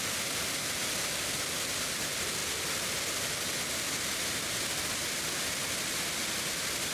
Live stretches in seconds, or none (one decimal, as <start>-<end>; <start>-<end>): 0.0-6.9